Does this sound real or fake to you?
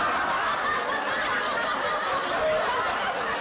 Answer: real